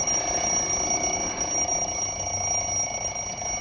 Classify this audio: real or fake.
real